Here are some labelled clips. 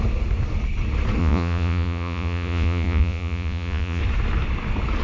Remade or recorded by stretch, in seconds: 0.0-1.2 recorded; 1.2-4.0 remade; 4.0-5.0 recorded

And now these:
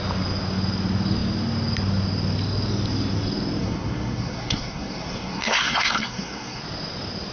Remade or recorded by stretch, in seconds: 0.0-3.6 recorded; 3.6-6.6 remade; 6.6-7.3 recorded

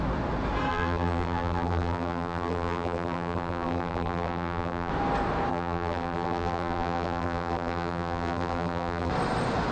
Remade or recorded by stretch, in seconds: 0.0-0.7 recorded; 0.7-4.9 remade; 4.9-5.5 recorded; 5.5-9.1 remade; 9.1-9.7 recorded

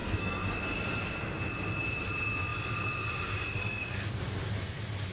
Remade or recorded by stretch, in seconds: 0.0-0.6 remade; 0.6-3.6 recorded; 3.6-4.2 remade; 4.2-5.1 recorded

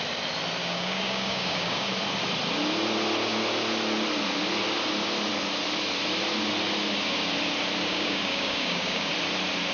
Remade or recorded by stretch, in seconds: 0.0-0.6 recorded; 0.6-1.9 remade; 1.9-7.9 recorded; 7.9-9.1 remade; 9.1-9.7 recorded

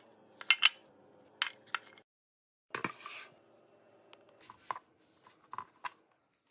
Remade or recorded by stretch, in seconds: 0.0-6.5 recorded

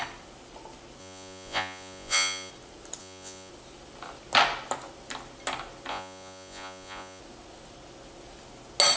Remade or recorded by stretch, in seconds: 0.0-1.0 recorded; 1.0-2.5 remade; 2.5-3.0 recorded; 3.0-3.5 remade; 3.5-5.9 recorded; 5.9-7.2 remade; 7.2-9.0 recorded